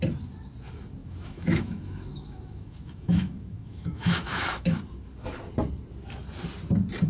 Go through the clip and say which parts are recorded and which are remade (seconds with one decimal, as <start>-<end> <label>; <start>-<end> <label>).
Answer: 0.0-1.0 recorded; 1.0-4.8 remade; 4.8-7.1 recorded